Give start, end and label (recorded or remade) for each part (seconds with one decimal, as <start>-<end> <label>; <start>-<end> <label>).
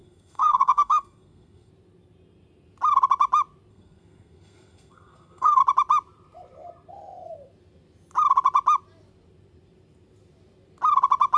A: 0.0-1.7 remade; 1.7-3.7 recorded; 3.7-5.6 remade; 5.6-11.4 recorded